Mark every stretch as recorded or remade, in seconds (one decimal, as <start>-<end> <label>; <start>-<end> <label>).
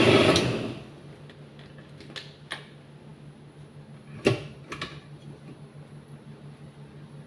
0.0-7.3 recorded